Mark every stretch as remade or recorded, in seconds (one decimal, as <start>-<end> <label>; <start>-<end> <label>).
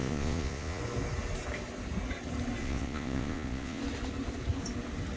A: 0.0-0.8 remade; 0.8-2.6 recorded; 2.6-3.8 remade; 3.8-5.2 recorded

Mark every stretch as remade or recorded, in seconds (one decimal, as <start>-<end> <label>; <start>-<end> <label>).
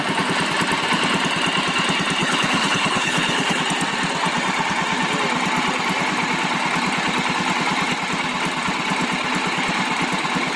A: 0.0-2.2 recorded; 2.2-3.6 remade; 3.6-10.6 recorded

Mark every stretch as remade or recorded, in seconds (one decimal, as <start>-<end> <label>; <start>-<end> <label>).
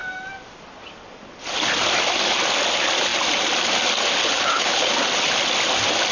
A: 0.0-4.2 recorded; 4.2-4.9 remade; 4.9-6.1 recorded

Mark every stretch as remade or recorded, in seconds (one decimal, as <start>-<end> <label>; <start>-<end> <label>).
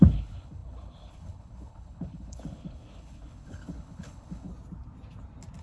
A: 0.0-4.5 remade; 4.5-5.6 recorded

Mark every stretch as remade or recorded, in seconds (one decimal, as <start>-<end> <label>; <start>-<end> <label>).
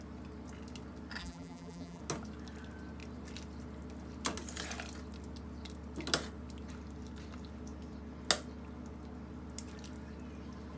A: 0.0-1.2 recorded; 1.2-2.0 remade; 2.0-10.8 recorded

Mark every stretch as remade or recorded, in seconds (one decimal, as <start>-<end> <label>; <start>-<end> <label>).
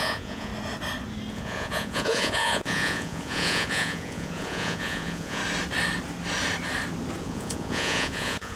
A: 0.0-0.5 remade; 0.5-1.3 recorded; 1.3-5.4 remade; 5.4-7.2 recorded; 7.2-8.6 remade